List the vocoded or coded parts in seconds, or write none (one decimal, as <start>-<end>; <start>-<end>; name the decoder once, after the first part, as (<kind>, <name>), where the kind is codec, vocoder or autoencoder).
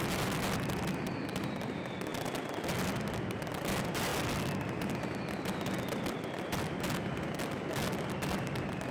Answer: none